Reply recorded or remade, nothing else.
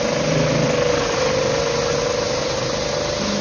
recorded